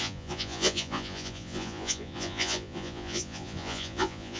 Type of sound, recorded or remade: remade